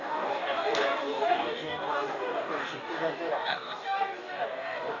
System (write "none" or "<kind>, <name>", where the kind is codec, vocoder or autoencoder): codec, DAC